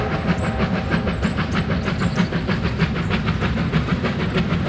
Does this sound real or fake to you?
real